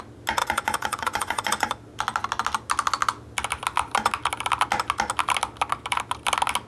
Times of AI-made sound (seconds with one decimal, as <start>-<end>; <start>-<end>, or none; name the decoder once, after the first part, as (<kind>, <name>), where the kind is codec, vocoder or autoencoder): 0.4-1.7 (vocoder, Vocos)